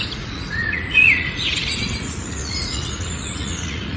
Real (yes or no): no